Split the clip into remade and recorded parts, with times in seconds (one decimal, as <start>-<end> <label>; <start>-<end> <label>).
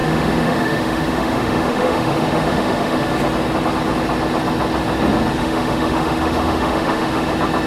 0.0-3.1 remade; 3.1-5.4 recorded; 5.4-7.3 remade; 7.3-7.7 recorded